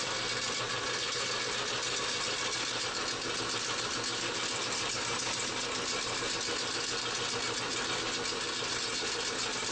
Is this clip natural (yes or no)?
yes